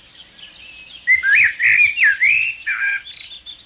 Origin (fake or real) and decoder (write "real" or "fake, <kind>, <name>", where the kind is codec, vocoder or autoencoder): real